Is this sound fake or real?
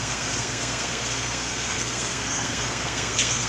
fake